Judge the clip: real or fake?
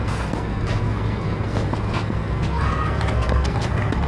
fake